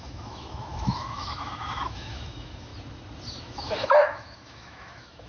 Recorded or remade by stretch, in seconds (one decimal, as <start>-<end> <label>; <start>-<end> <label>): 0.0-2.7 remade; 2.7-3.4 recorded; 3.4-5.3 remade